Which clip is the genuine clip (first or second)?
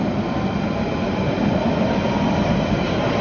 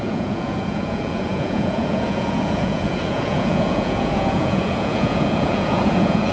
first